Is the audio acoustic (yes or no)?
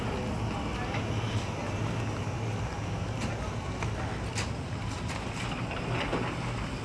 yes